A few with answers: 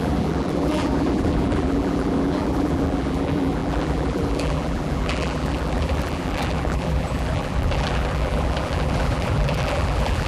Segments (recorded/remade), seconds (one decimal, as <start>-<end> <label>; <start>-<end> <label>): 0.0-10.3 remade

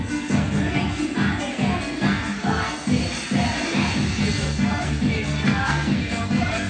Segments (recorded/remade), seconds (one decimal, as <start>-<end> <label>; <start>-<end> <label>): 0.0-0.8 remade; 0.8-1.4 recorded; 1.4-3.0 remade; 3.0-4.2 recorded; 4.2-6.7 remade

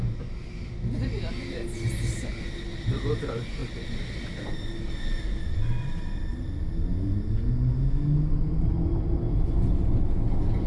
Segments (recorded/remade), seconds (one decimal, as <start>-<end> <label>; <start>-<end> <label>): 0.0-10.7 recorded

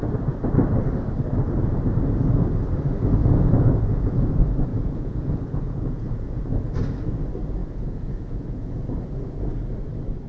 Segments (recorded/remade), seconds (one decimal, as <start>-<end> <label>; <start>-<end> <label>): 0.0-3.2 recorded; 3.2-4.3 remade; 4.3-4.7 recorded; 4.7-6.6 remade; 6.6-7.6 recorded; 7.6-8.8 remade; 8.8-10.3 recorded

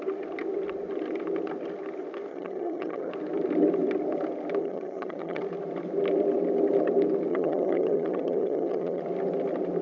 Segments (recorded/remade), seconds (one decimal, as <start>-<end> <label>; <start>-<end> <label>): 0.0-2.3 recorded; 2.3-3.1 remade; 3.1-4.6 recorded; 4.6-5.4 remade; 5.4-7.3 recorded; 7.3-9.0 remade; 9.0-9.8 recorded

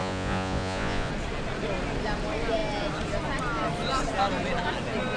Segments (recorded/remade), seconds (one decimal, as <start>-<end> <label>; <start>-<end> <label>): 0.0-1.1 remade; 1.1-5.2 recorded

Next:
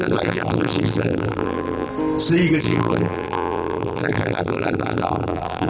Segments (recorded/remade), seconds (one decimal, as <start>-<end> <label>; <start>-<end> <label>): 0.0-1.9 remade; 1.9-2.6 recorded; 2.6-5.7 remade